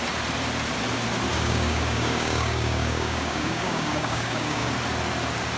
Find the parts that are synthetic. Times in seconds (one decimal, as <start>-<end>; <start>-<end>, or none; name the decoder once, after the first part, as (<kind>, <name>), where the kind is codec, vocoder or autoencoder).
1.3-4.7 (codec, DAC)